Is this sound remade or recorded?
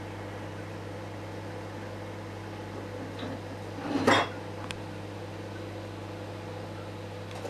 recorded